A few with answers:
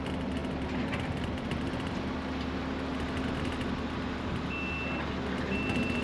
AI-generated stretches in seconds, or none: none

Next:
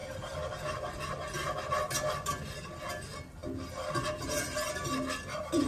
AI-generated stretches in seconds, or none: none

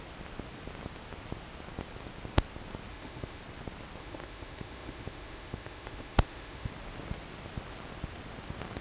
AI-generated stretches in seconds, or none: 2.9-3.4 (autoencoder, DAC-VAE); 4.0-6.7

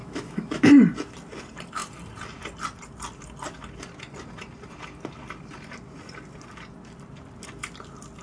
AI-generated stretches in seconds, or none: 0.0-0.7 (autoencoder, DAC-VAE)

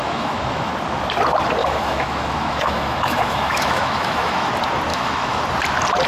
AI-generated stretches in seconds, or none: 0.0-0.7 (autoencoder, DAC-VAE); 1.6-4.5; 4.9-5.4

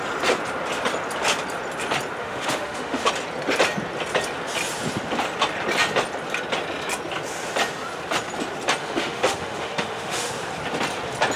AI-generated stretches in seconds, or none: 2.2-3.1 (autoencoder, DAC-VAE); 8.8-10.3

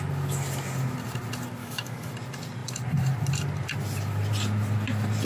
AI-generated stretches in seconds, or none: 1.6-2.1 (autoencoder, DAC-VAE)

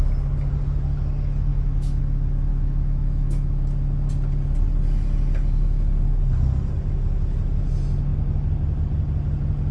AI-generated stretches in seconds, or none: 1.5-2.0 (autoencoder, DAC-VAE); 2.5-3.6